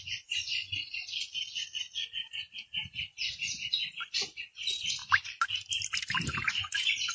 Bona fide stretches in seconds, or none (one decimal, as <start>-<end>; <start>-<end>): 0.6-1.8; 5.0-6.5

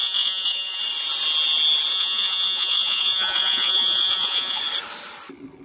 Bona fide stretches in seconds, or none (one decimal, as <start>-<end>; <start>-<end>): 0.8-1.9; 4.6-5.6

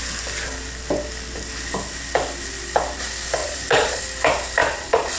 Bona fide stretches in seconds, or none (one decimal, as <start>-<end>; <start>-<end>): 0.0-3.4; 4.0-4.6